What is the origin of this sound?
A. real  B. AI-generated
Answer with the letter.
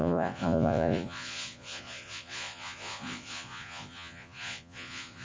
B